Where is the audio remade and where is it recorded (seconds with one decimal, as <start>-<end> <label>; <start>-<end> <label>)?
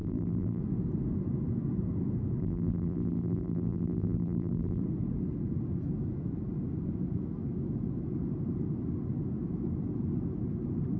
0.0-0.6 remade; 0.6-2.4 recorded; 2.4-4.8 remade; 4.8-11.0 recorded